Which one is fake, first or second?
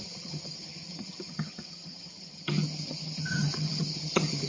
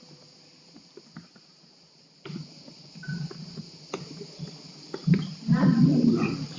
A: first